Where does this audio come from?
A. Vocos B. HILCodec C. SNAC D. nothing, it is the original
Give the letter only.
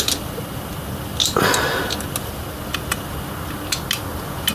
D